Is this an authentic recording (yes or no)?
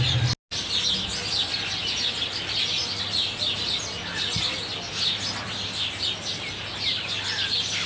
yes